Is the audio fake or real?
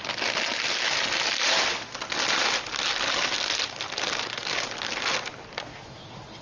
real